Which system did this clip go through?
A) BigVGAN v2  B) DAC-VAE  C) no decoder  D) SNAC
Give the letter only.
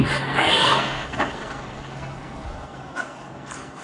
D